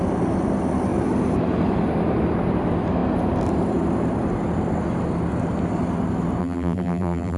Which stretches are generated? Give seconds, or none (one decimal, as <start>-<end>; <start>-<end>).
6.4-7.4